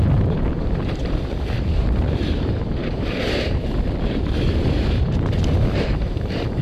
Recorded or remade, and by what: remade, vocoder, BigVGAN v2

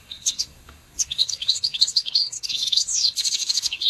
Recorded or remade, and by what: remade, codec, SNAC